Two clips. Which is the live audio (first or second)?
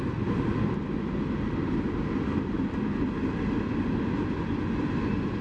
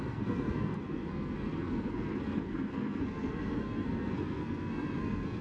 first